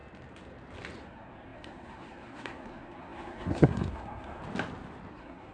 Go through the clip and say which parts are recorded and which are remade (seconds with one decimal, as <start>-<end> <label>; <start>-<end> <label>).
0.0-1.0 recorded; 1.0-4.4 remade; 4.4-5.1 recorded; 5.1-5.5 remade